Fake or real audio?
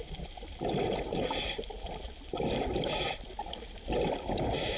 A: real